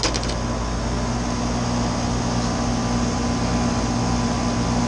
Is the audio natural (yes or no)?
yes